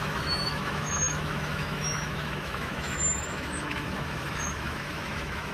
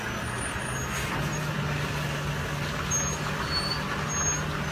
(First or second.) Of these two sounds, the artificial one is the first